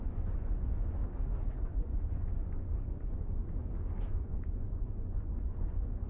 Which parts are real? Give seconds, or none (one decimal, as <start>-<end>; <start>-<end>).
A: 1.0-1.5; 3.4-4.1